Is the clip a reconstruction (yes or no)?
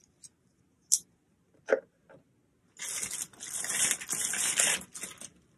no